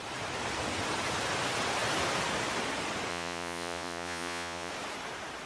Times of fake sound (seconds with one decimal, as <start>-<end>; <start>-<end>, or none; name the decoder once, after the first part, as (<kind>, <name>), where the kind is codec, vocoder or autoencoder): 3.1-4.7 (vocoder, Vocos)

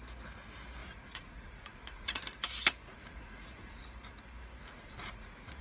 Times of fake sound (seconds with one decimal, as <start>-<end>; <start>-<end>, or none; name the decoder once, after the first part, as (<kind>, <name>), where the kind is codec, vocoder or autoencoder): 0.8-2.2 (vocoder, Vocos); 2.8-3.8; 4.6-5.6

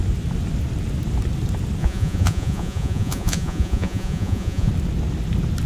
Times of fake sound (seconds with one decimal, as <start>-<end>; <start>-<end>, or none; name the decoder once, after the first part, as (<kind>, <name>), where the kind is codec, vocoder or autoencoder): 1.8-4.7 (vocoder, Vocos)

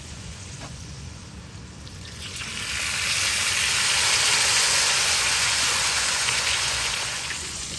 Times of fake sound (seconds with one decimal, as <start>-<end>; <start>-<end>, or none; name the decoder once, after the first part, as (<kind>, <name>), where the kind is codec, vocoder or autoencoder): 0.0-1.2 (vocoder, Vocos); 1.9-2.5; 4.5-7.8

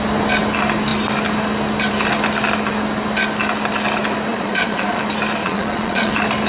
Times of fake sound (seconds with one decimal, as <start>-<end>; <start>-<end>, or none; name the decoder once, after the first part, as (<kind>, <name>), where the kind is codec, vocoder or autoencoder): 4.3-5.0 (vocoder, Vocos); 5.4-6.1

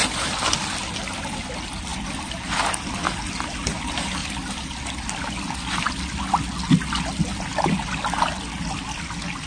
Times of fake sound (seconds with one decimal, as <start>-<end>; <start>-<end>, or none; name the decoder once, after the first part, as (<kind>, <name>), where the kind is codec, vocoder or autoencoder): none

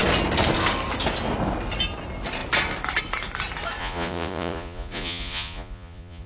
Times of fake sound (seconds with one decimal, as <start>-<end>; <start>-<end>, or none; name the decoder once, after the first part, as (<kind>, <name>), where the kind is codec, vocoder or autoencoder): 3.8-6.3 (vocoder, Vocos)

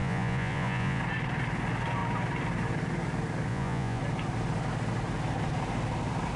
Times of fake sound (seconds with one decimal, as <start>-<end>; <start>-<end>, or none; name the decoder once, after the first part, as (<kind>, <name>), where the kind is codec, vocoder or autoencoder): 0.0-1.0 (vocoder, Vocos); 3.5-4.0